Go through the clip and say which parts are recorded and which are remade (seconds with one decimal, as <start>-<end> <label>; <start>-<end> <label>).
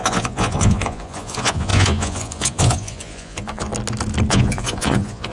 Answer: 0.0-3.7 remade; 3.7-4.3 recorded; 4.3-5.3 remade